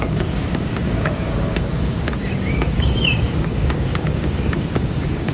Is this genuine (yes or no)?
no